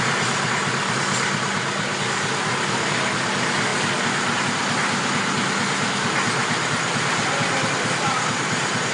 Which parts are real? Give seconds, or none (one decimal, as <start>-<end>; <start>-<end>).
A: 0.0-6.4; 7.7-8.9